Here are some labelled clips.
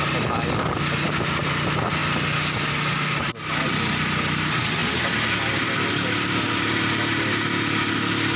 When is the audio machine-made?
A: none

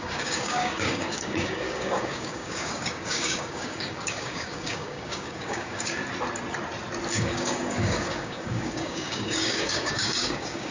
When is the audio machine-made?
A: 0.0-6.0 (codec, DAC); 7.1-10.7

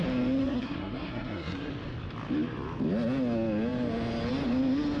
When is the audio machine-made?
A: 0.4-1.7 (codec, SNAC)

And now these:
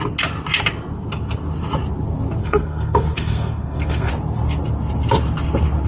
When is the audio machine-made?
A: 2.4-4.1 (codec, SNAC)